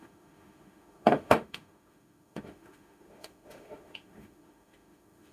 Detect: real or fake fake